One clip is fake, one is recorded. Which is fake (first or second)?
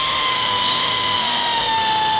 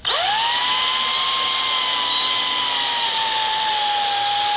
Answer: first